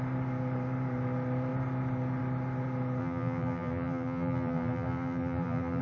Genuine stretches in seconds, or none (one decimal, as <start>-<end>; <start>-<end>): 0.0-3.0